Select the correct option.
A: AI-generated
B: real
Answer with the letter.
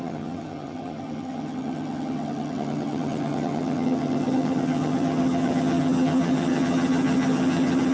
A